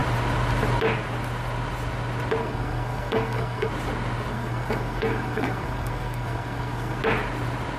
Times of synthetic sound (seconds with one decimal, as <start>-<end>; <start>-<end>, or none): 2.4-3.7; 4.3-7.0

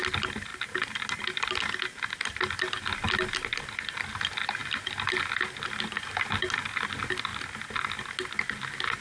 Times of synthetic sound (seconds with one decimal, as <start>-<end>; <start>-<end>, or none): none